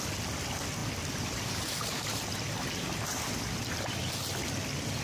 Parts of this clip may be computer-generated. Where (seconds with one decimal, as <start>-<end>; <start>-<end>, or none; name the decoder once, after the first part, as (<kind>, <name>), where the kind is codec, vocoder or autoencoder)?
none